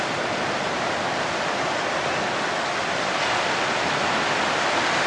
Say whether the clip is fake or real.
real